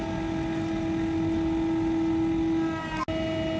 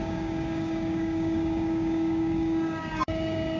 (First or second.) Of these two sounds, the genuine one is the first